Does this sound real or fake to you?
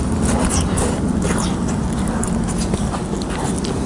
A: real